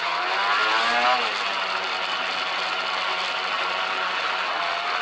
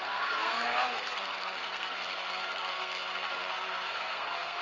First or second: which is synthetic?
second